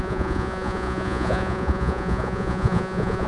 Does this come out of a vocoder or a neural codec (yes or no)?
yes